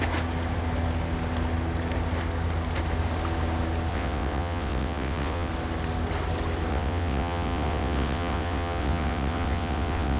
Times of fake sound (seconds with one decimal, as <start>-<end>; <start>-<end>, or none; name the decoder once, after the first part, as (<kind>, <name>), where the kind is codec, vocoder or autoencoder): 3.9-5.5 (vocoder, WaveNeXt); 6.7-10.2